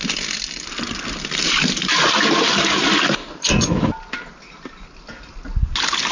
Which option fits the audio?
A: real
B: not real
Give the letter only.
A